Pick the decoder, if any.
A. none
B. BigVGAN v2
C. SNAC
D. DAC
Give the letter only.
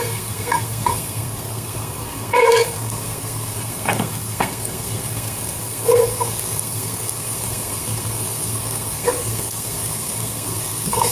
C